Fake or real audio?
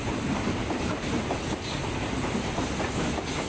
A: real